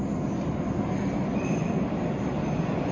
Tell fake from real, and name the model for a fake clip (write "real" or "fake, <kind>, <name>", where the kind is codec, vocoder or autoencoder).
real